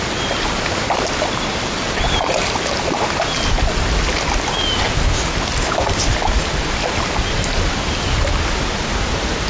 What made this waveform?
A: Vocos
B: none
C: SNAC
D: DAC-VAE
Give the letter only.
B